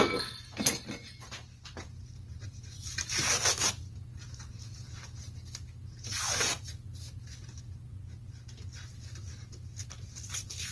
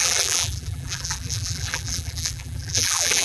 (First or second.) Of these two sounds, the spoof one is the second